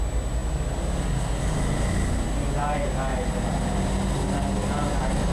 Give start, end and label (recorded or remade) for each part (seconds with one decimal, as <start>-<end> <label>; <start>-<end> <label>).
0.0-5.3 recorded